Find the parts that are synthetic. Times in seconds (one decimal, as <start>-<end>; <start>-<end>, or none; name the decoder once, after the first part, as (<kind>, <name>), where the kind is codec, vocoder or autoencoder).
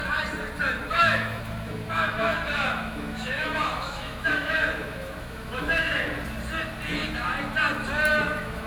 0.9-6.1 (autoencoder, DAC-VAE); 8.1-8.7